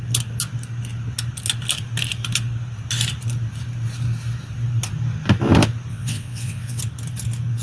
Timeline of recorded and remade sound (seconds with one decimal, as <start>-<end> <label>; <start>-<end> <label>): 0.0-5.9 recorded; 5.9-6.8 remade; 6.8-7.6 recorded